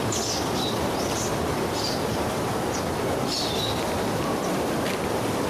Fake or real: real